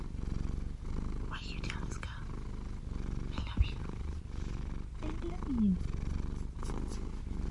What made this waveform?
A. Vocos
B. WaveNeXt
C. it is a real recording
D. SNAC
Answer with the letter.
C